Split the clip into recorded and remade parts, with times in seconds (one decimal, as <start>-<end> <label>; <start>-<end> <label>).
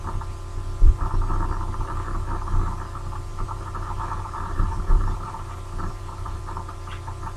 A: 0.0-3.3 recorded; 3.3-6.4 remade; 6.4-7.4 recorded